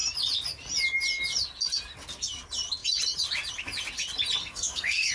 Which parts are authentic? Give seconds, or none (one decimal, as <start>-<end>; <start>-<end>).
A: 0.0-4.4